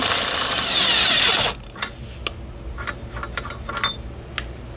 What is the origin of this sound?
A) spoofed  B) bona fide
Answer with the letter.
B